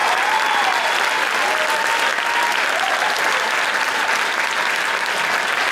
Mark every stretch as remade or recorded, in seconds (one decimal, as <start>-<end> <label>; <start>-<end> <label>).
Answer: 0.0-5.7 recorded